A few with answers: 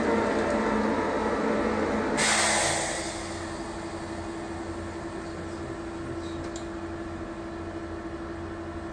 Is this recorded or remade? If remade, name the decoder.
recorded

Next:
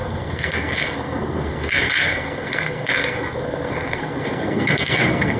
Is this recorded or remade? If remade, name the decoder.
remade, codec, SNAC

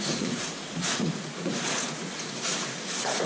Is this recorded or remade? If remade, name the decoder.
remade, vocoder, Vocos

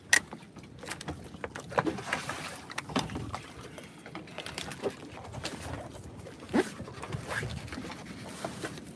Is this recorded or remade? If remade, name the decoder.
recorded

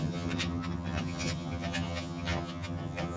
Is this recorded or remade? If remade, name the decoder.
remade, vocoder, HiFi-GAN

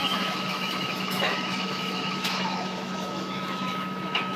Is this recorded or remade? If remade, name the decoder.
remade, autoencoder, DAC-VAE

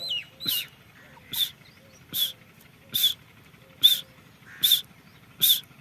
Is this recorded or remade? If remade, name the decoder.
recorded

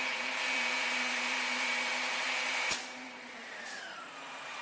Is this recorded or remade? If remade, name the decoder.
remade, vocoder, BigVGAN v2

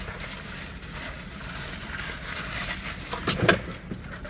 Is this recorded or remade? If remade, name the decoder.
recorded